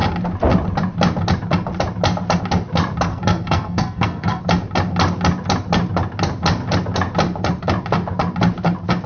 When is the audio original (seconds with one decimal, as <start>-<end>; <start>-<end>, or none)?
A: 0.0-3.1; 4.4-9.1